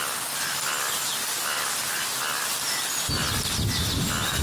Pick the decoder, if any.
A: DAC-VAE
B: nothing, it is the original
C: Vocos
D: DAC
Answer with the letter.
B